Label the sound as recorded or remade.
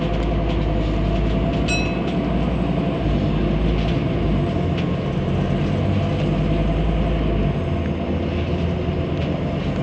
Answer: recorded